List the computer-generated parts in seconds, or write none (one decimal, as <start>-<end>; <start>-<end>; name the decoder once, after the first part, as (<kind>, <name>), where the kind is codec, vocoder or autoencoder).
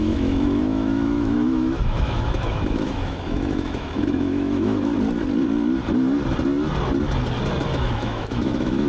0.0-4.9 (autoencoder, DAC-VAE); 7.8-8.9